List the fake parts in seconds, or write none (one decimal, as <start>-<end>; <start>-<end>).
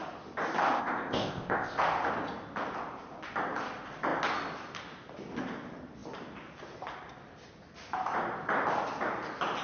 0.8-1.8